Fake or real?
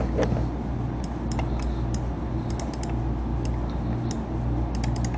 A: real